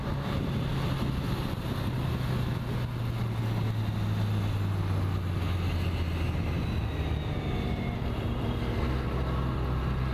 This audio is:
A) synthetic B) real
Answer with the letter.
B